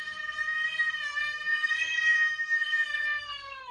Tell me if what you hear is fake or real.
fake